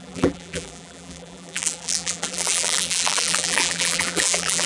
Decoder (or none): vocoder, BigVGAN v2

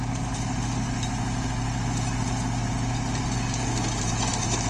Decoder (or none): none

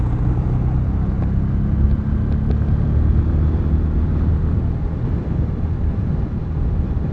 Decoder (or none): none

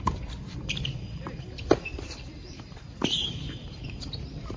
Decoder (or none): vocoder, BigVGAN v2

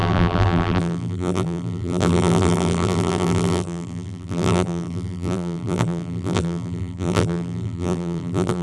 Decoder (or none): vocoder, BigVGAN v2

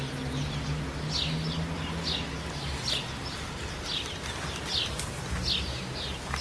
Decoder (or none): none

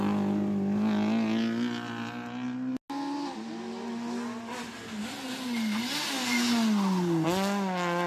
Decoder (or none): none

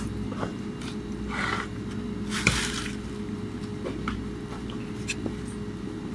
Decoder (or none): vocoder, BigVGAN v2